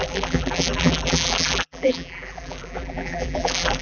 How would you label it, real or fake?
fake